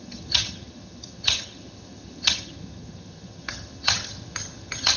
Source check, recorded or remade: remade